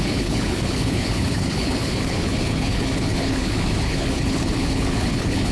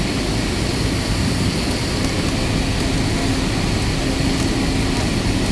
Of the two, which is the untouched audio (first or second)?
second